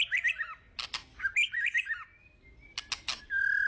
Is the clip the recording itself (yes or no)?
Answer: yes